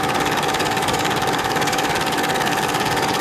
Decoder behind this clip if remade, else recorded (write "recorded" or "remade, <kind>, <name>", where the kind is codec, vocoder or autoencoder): remade, codec, DAC